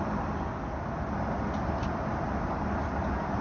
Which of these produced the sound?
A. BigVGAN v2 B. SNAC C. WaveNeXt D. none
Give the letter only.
D